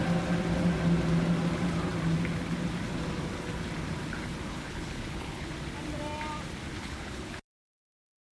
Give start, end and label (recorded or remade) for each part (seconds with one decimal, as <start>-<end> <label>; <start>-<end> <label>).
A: 0.0-4.5 recorded; 4.5-5.5 remade; 5.5-6.8 recorded; 6.8-7.3 remade; 7.3-8.3 recorded